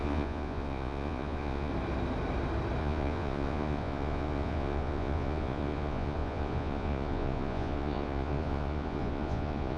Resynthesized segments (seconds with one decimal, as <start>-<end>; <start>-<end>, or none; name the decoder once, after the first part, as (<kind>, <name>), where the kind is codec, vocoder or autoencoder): 0.0-1.7 (vocoder, Vocos); 2.8-9.8